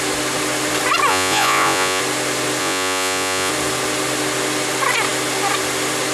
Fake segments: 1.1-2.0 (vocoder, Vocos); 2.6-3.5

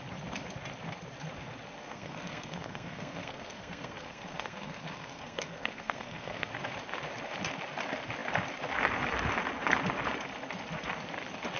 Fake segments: 1.8-6.5 (codec, SNAC)

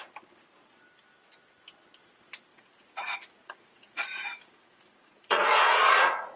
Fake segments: 2.5-6.4 (vocoder, Vocos)

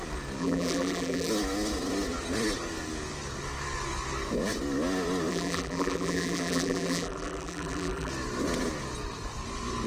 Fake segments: 0.4-1.3 (vocoder, BigVGAN v2); 5.3-8.1

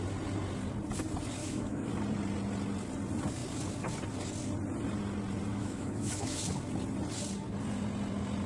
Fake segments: 1.4-1.9 (autoencoder, DAC-VAE); 5.5-6.4

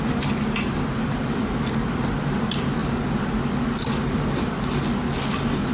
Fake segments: none

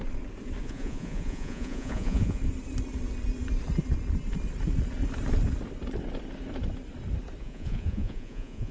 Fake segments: 0.6-2.4 (vocoder, Vocos); 7.4-8.7

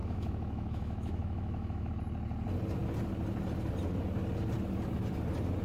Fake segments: 0.0-1.9 (autoencoder, DAC-VAE)